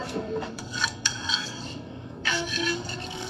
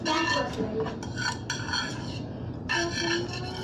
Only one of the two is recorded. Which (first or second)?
second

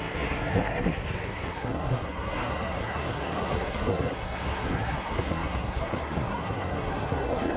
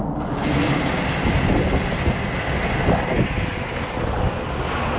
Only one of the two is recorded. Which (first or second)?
second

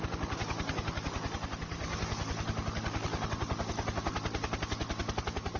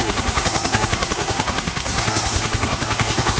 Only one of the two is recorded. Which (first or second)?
first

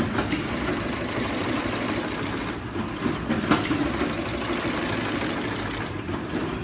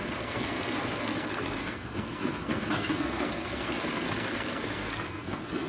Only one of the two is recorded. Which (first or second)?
first